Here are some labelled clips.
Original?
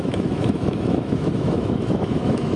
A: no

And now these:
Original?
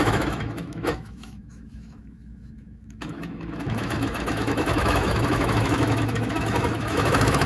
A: no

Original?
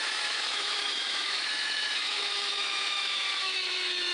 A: no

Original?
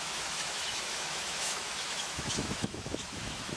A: no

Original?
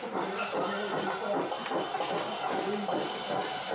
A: yes